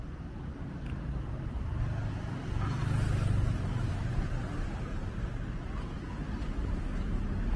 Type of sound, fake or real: real